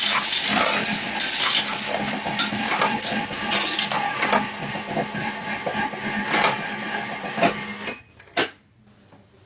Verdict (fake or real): real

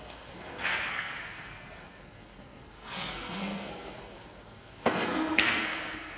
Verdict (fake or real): fake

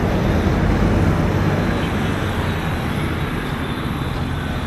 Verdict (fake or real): real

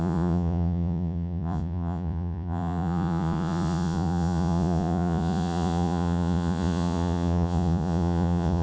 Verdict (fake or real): fake